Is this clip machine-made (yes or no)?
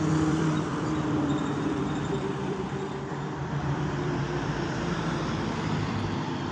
yes